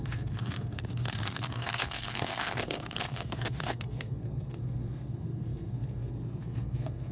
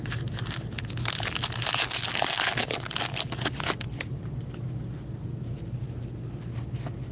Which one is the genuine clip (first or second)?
second